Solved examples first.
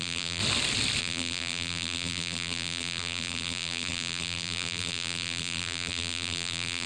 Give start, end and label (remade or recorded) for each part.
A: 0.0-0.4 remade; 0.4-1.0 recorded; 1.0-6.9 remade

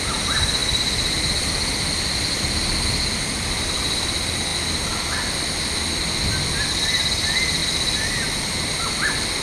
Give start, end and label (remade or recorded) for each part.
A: 0.0-9.4 recorded